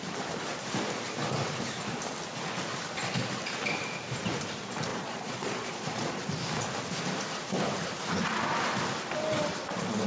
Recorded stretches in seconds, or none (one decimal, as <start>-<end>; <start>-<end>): 0.0-4.9; 6.2-10.1